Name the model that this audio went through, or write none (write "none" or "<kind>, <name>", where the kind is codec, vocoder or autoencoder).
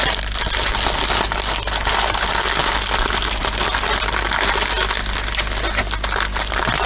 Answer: none